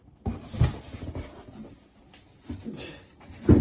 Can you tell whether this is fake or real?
real